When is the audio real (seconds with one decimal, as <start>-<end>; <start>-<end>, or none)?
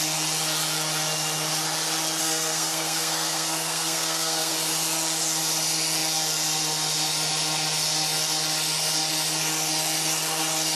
0.0-2.2; 4.5-10.7